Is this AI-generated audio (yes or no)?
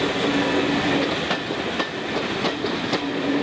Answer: no